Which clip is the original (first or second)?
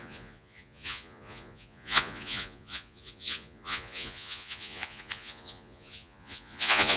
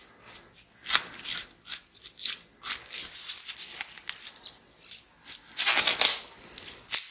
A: second